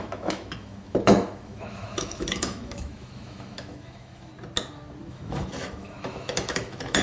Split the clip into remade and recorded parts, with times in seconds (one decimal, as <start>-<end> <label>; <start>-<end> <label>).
0.0-4.3 remade; 4.3-5.1 recorded; 5.1-7.0 remade